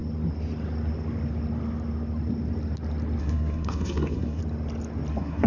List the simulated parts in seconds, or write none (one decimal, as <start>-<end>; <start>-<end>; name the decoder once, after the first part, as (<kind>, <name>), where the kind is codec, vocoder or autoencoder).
3.2-4.4 (codec, SNAC); 5.1-5.5